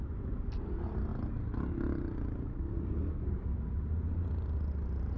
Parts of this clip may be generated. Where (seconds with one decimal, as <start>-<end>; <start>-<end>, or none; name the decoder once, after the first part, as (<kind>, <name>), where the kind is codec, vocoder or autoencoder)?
none